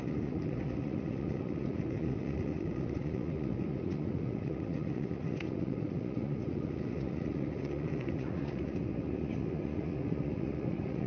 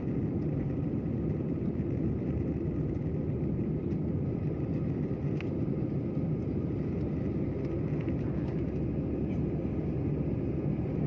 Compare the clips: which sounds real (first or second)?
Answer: second